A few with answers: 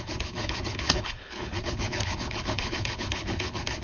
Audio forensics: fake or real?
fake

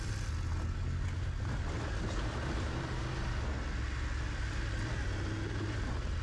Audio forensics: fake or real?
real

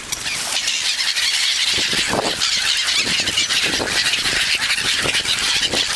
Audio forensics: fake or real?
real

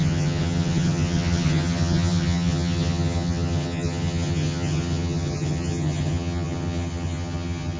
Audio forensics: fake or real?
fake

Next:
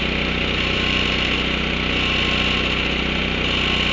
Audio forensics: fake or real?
real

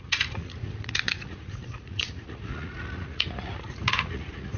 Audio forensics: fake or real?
fake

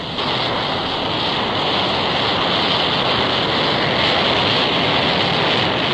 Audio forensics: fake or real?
real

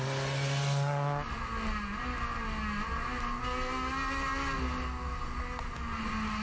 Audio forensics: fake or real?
real